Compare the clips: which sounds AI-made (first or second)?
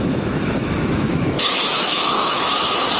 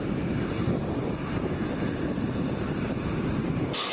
first